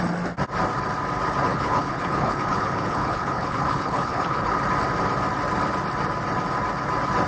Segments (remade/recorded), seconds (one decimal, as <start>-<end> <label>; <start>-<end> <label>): 0.0-1.5 recorded; 1.5-4.6 remade; 4.6-7.3 recorded